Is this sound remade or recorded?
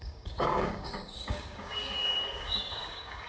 remade